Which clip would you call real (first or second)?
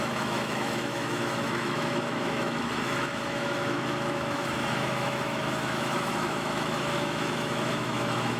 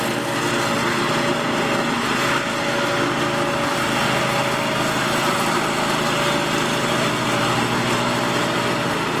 second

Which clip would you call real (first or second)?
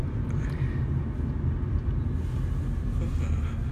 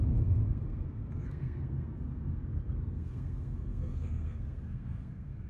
first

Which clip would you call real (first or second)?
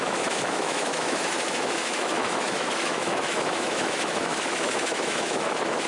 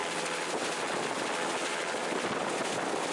second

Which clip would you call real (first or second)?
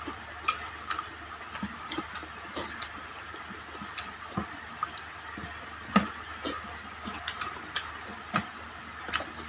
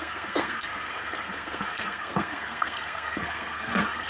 first